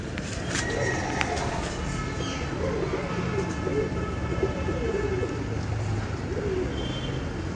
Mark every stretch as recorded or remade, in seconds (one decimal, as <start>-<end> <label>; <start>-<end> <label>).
0.0-3.7 recorded; 3.7-5.2 remade; 5.2-7.6 recorded